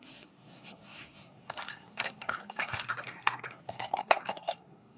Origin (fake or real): fake